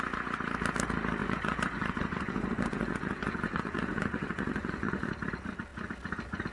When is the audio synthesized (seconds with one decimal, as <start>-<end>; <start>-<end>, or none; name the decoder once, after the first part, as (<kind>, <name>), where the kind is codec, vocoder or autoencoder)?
1.2-5.1 (vocoder, Vocos)